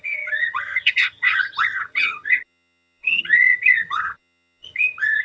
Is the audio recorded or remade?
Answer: remade